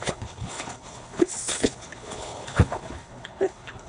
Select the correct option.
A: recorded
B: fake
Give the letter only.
B